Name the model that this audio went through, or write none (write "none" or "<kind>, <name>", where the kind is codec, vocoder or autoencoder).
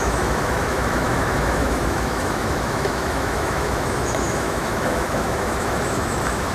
autoencoder, DAC-VAE